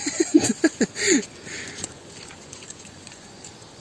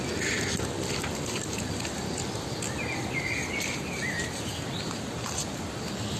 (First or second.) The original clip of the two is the second